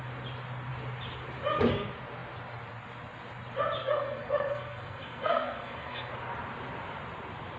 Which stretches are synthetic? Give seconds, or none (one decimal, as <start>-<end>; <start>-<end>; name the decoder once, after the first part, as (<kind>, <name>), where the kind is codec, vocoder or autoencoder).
3.8-6.1 (codec, SNAC)